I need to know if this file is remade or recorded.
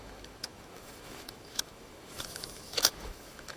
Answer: remade